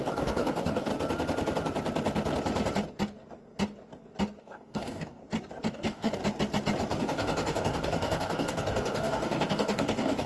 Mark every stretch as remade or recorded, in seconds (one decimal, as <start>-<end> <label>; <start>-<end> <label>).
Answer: 0.0-0.9 remade; 0.9-4.4 recorded; 4.4-5.2 remade; 5.2-5.7 recorded; 5.7-6.2 remade; 6.2-7.0 recorded; 7.0-10.3 remade